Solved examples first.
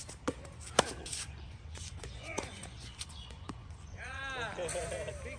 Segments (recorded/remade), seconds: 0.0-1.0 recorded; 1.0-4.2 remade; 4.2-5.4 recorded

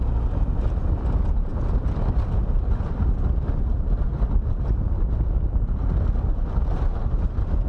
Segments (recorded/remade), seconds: 0.0-7.7 recorded